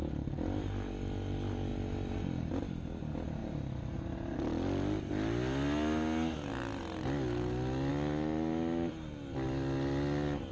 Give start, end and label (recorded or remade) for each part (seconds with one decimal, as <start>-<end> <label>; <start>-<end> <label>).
0.0-10.5 recorded